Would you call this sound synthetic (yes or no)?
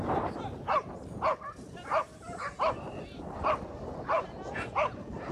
no